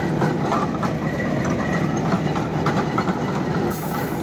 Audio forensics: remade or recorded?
recorded